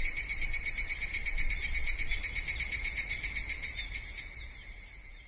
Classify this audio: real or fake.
real